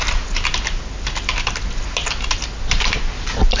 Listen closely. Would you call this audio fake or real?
real